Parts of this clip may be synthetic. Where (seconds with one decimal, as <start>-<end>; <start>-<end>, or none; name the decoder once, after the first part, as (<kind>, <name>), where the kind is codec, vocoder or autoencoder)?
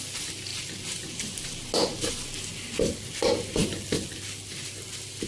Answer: none